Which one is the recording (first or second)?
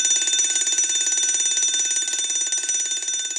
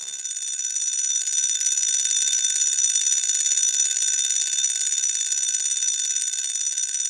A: first